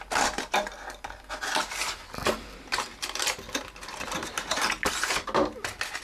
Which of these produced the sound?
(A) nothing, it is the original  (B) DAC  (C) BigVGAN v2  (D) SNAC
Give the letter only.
A